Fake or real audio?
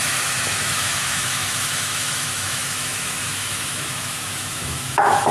fake